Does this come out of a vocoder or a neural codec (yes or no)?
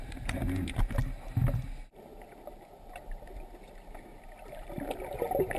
no